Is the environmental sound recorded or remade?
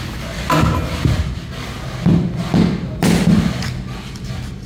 recorded